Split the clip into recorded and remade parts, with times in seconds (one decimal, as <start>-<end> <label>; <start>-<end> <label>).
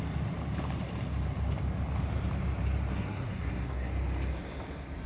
0.0-2.9 recorded; 2.9-3.9 remade; 3.9-5.1 recorded